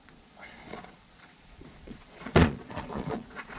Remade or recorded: remade